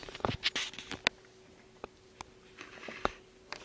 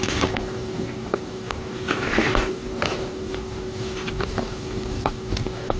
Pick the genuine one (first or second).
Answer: first